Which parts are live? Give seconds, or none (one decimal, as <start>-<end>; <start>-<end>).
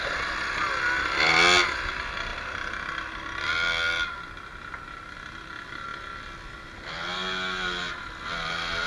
0.0-8.9